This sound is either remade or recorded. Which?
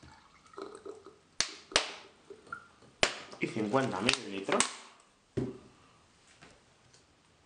recorded